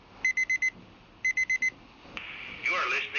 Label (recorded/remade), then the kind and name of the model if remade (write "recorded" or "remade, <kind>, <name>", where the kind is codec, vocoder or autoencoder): recorded